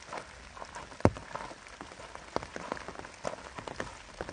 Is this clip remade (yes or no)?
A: no